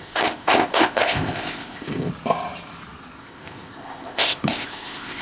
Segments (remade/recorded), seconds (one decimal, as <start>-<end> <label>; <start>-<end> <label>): 0.0-2.1 remade; 2.1-3.2 recorded; 3.2-5.2 remade